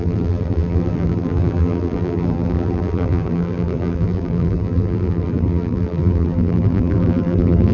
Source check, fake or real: fake